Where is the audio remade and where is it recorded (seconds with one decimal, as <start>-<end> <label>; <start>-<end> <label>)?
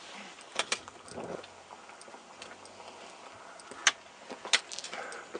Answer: 0.0-5.4 recorded